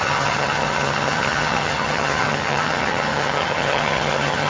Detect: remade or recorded remade